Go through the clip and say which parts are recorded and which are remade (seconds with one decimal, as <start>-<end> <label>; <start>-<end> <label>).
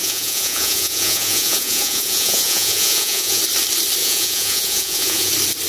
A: 0.0-3.4 remade; 3.4-4.0 recorded; 4.0-5.3 remade; 5.3-5.7 recorded